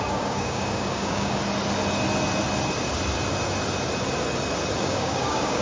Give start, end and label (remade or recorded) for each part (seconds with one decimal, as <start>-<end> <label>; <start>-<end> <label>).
0.0-1.4 remade; 1.4-4.8 recorded; 4.8-5.6 remade